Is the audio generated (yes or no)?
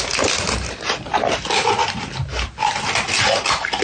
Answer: no